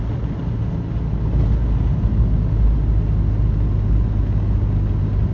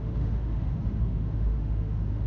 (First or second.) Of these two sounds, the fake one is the second